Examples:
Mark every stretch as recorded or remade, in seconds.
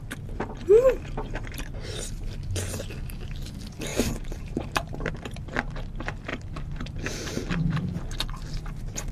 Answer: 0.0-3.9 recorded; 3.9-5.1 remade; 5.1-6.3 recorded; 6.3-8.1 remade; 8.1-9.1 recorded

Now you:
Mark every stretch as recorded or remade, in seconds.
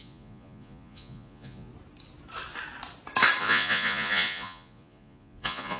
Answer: 0.0-1.7 remade; 1.7-3.4 recorded; 3.4-5.8 remade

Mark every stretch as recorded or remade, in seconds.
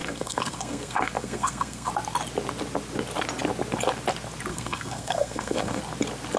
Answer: 0.0-1.9 remade; 1.9-4.5 recorded; 4.5-5.8 remade; 5.8-6.4 recorded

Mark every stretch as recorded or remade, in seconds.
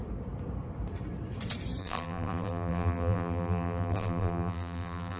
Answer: 0.0-1.8 recorded; 1.8-5.2 remade